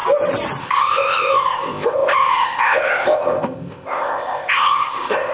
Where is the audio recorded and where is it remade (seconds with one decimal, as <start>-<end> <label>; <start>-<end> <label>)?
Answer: 0.0-0.6 recorded; 0.6-5.3 remade